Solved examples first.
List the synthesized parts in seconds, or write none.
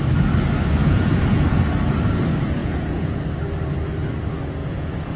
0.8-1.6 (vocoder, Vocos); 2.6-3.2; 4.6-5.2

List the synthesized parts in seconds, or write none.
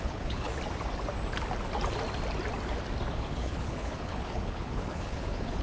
0.0-0.5 (codec, HILCodec); 3.1-5.6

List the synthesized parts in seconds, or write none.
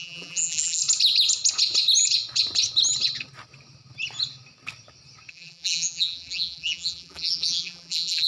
0.0-0.8 (vocoder, BigVGAN v2); 5.3-8.3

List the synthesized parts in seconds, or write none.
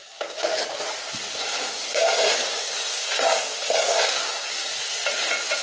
0.0-0.6 (codec, DAC); 1.3-4.7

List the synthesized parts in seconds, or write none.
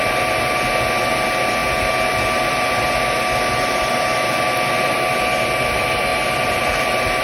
6.1-6.8 (vocoder, BigVGAN v2)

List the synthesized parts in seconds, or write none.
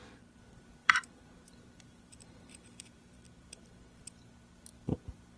0.8-4.0 (vocoder, BigVGAN v2)